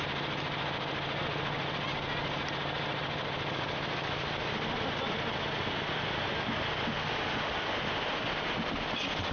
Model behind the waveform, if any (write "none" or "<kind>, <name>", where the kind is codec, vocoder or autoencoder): none